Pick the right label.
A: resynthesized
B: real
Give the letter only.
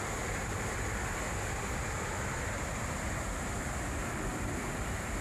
B